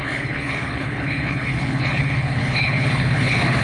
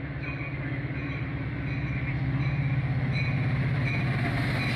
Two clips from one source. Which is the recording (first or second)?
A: second